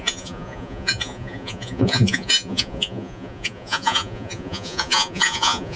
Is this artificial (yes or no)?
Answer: yes